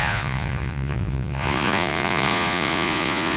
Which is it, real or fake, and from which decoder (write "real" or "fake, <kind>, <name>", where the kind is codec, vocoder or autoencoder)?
fake, vocoder, Vocos